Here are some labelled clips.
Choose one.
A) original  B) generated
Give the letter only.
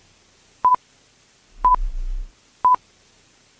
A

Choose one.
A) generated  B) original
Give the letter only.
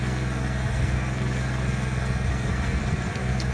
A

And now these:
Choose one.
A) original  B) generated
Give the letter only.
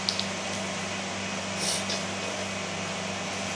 A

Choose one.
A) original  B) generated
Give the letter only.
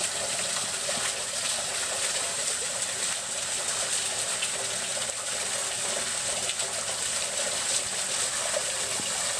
A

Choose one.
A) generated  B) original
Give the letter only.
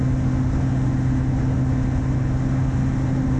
B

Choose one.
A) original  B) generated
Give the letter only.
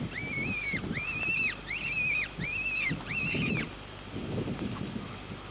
A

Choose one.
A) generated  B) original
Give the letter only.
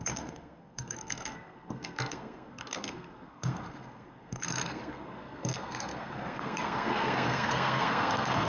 A